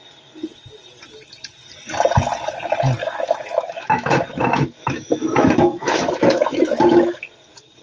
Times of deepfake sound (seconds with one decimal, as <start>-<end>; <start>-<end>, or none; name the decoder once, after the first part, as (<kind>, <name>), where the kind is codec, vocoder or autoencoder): 3.0-7.2 (autoencoder, DAC-VAE)